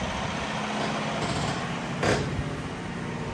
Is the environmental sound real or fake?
real